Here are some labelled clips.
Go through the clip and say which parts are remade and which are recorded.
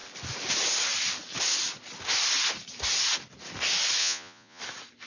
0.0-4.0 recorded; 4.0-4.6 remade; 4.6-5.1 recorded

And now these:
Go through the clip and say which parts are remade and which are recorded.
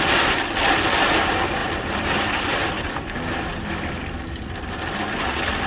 0.0-1.6 recorded; 1.6-5.0 remade; 5.0-5.7 recorded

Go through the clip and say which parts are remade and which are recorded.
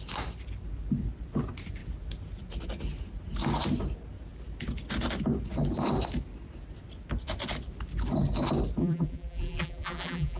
0.0-8.8 recorded; 8.8-10.4 remade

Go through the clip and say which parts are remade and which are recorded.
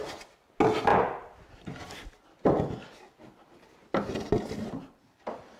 0.0-5.6 recorded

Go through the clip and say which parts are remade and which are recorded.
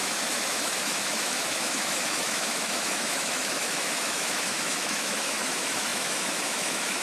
0.0-7.0 remade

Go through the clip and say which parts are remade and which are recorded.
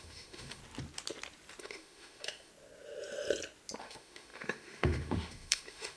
0.0-0.6 remade; 0.6-1.6 recorded; 1.6-2.5 remade; 2.5-3.8 recorded; 3.8-6.0 remade